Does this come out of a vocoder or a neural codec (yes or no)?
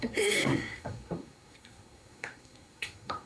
yes